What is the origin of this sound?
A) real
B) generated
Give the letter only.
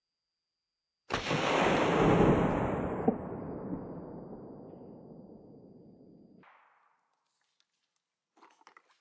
A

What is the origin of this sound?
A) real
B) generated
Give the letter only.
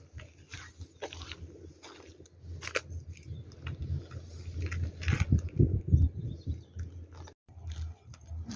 A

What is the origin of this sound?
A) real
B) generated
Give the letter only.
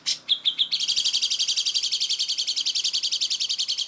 A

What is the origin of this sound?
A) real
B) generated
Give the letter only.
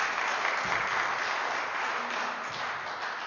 A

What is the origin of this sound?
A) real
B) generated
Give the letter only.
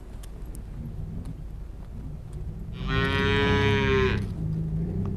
A